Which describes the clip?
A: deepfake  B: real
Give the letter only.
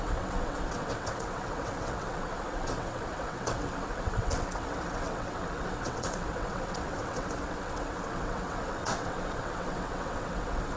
A